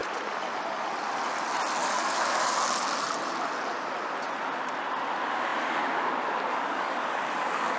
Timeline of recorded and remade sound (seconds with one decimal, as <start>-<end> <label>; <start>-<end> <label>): 0.0-1.8 recorded; 1.8-2.6 remade; 2.6-6.5 recorded; 6.5-7.8 remade